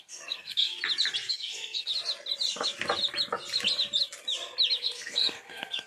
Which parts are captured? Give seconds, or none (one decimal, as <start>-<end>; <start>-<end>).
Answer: 0.7-1.3; 1.9-4.8